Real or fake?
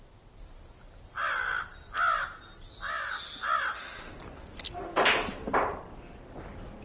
real